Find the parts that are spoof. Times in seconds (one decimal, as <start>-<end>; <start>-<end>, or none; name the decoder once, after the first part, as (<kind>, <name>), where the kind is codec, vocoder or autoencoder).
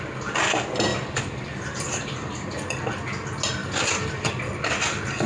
0.9-2.8 (vocoder, BigVGAN v2); 3.6-4.3